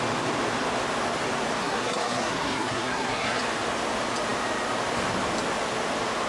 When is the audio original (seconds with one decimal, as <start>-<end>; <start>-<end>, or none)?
0.0-1.6; 3.4-6.3

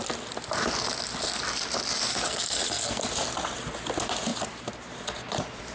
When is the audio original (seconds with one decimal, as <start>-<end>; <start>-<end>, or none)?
0.0-2.1; 3.0-5.7

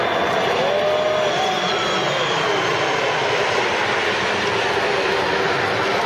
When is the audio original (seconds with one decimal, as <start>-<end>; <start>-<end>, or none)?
0.0-6.1

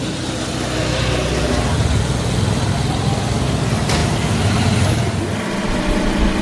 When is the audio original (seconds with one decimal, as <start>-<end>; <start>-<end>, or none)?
0.0-6.4

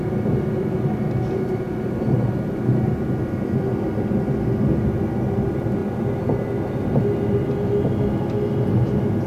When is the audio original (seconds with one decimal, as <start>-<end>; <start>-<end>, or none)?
0.0-9.3

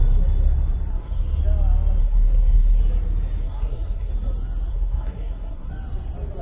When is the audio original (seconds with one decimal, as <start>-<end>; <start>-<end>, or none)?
0.0-0.9; 1.4-2.0; 2.8-3.4; 4.1-4.7; 5.7-6.4

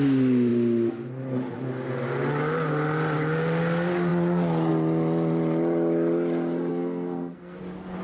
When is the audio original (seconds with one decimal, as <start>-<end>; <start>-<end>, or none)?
0.0-6.7; 7.6-8.0